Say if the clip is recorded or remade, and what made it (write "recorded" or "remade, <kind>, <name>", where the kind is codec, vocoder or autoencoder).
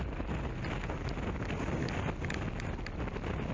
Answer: recorded